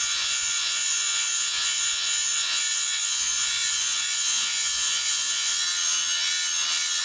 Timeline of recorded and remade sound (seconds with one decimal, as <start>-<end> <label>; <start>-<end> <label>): 0.0-5.5 remade; 5.5-7.0 recorded